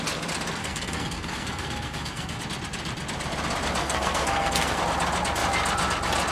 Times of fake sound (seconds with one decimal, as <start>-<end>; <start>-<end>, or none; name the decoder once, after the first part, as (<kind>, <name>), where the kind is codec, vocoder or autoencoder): 0.6-2.4 (codec, SNAC); 3.8-4.8